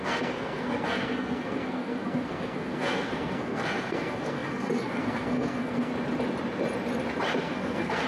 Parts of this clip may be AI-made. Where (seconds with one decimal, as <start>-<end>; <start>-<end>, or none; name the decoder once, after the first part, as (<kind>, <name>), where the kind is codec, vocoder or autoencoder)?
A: 0.0-5.9 (codec, SNAC); 7.4-8.1